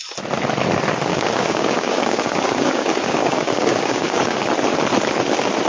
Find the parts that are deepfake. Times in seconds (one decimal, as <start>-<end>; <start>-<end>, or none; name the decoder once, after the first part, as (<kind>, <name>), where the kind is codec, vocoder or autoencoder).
1.1-4.5 (codec, DAC)